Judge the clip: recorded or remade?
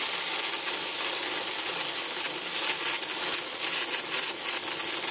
recorded